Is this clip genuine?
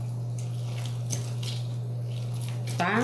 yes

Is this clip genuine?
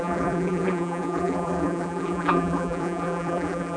no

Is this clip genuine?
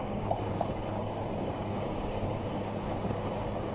no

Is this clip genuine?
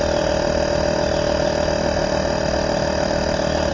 yes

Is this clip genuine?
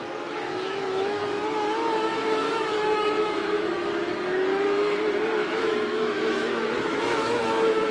no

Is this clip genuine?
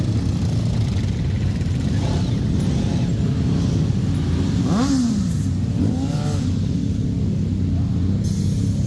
yes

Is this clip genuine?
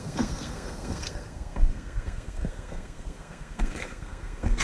no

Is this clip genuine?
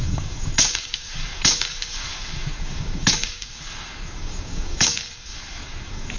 no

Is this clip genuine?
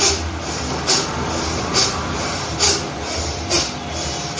yes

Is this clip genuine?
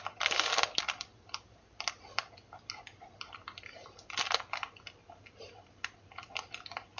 yes